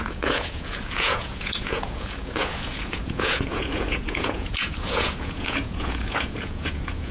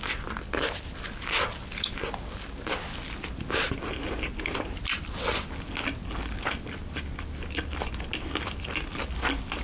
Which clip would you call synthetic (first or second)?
first